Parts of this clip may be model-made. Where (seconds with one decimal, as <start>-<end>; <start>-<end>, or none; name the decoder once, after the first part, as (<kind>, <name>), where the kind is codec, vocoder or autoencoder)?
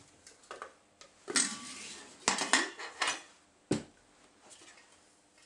none